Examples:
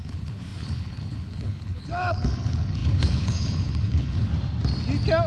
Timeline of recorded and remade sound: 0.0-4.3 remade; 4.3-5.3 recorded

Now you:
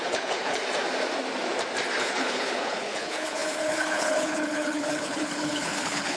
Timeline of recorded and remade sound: 0.0-0.6 remade; 0.6-2.0 recorded; 2.0-6.2 remade